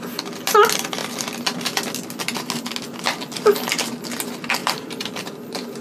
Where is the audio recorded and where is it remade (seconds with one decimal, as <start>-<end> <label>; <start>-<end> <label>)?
0.0-4.6 recorded; 4.6-5.8 remade